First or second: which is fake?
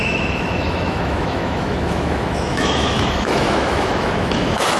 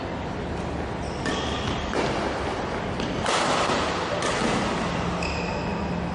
first